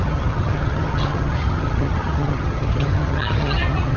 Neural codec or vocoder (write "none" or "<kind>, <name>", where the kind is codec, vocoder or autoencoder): vocoder, HiFi-GAN